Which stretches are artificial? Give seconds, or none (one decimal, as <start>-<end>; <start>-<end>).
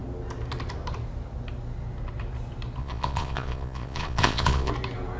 2.8-4.7